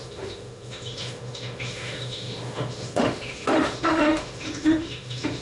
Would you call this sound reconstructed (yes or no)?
yes